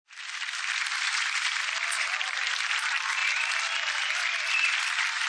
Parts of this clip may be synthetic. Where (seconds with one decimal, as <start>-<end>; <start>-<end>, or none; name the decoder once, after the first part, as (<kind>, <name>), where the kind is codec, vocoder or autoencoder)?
0.0-5.3 (vocoder, BigVGAN v2)